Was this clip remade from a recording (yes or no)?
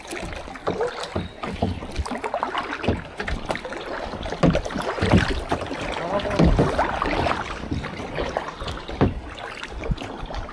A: no